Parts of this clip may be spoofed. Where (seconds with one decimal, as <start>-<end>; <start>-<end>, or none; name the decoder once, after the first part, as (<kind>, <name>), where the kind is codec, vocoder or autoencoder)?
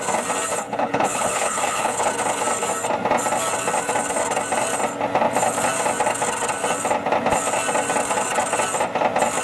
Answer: 0.5-2.1 (codec, HILCodec)